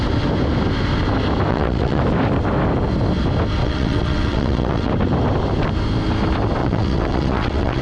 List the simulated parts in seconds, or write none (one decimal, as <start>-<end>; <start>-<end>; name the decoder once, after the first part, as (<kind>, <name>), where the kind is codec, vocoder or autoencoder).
1.5-2.0 (vocoder, WaveNeXt); 3.6-4.9; 6.6-7.8